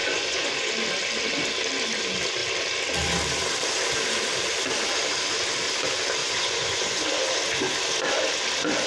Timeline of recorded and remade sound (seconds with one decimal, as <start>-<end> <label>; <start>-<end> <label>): 0.0-0.7 remade; 0.7-6.2 recorded; 6.2-7.1 remade; 7.1-8.9 recorded